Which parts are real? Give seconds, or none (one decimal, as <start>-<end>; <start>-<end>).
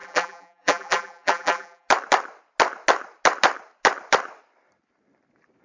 1.9-5.6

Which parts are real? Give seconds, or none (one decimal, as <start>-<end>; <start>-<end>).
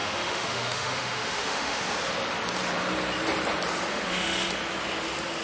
1.8-3.9; 4.5-5.4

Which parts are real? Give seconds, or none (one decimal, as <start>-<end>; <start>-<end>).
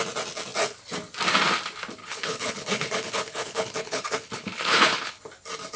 0.0-2.0; 5.2-5.8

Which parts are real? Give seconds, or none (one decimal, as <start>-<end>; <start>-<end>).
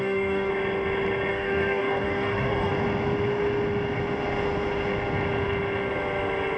0.5-1.3; 2.7-6.6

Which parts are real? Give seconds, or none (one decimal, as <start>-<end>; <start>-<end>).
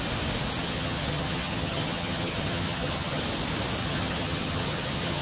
0.0-0.6; 3.2-3.8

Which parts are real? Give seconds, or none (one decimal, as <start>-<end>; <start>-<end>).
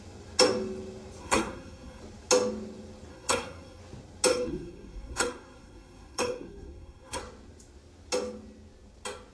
0.0-1.2; 2.0-3.1; 3.8-4.3; 7.2-9.3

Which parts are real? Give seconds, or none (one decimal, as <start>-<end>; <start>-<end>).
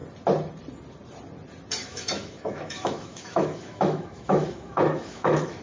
0.0-1.8